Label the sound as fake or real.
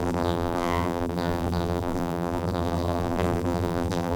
fake